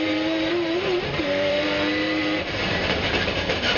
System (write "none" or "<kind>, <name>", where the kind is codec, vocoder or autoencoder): vocoder, BigVGAN v2